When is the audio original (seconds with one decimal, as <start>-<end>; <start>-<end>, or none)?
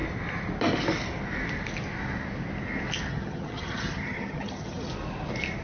0.0-3.1; 4.9-5.6